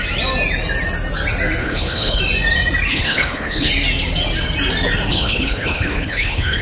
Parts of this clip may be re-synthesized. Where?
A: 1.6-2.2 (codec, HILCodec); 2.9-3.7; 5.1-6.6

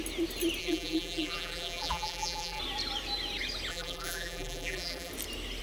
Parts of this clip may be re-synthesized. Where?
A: 0.6-2.6 (vocoder, BigVGAN v2); 3.7-5.1